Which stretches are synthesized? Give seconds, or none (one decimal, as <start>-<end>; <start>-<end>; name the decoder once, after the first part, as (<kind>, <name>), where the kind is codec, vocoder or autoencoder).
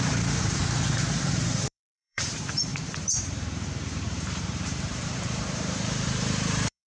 0.0-0.6 (vocoder, BigVGAN v2); 1.5-6.9